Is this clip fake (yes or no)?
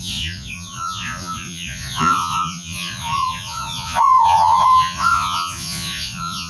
yes